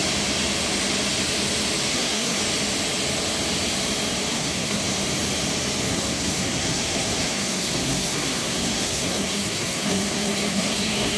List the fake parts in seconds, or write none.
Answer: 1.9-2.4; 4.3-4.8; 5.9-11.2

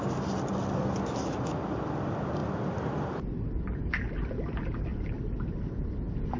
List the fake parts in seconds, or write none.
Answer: none

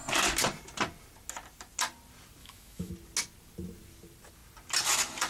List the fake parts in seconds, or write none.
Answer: 2.4-2.9

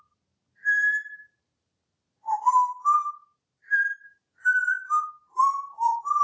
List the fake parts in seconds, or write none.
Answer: 3.6-5.5

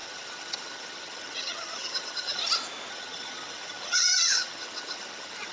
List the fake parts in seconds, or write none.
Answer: 0.0-2.4; 2.9-5.5

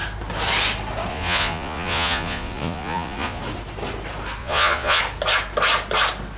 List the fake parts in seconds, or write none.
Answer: 1.1-3.4; 4.4-5.0

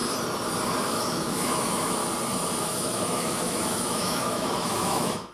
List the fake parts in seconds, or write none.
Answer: 0.8-2.0; 2.6-5.3